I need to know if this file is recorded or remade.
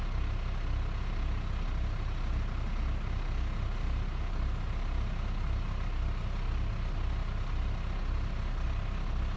recorded